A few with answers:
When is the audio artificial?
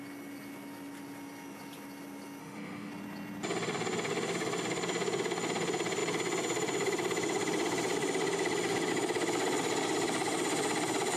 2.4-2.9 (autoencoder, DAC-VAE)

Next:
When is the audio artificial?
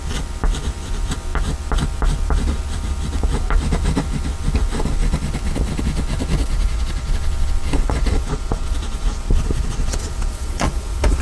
6.4-7.1 (vocoder, Vocos); 7.8-11.2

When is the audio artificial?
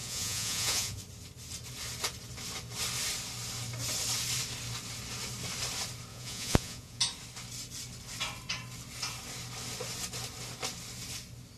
0.0-1.0 (vocoder, Vocos); 6.1-7.0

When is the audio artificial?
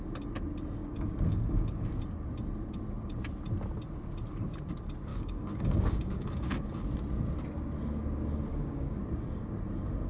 0.8-2.0 (codec, DAC); 5.1-6.6; 8.5-9.0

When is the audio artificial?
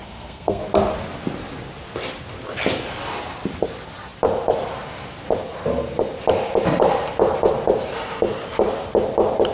0.0-0.6 (codec, SNAC)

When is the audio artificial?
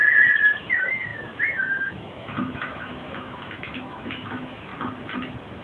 0.7-4.7 (autoencoder, DAC-VAE)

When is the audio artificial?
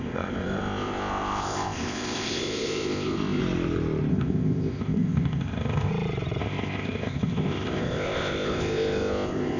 0.0-3.4 (codec, ZipCodec); 4.1-5.9; 6.4-9.6